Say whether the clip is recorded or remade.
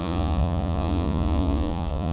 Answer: remade